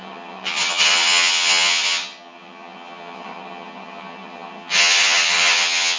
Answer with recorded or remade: remade